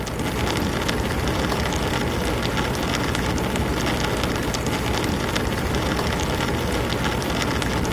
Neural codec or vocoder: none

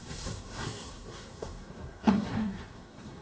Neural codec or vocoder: codec, SNAC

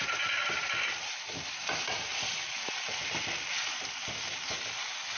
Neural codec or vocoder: none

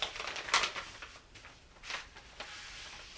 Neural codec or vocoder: none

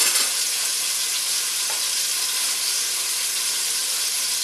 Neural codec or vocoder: none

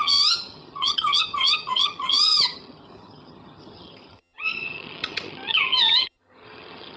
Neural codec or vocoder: vocoder, HiFi-GAN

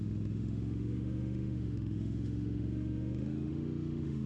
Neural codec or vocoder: autoencoder, DAC-VAE